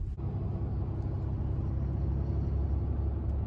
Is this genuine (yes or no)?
yes